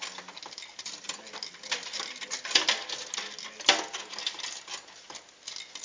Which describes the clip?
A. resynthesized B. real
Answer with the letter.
B